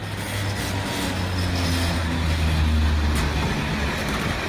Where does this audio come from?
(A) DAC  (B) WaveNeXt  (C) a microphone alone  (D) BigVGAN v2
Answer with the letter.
C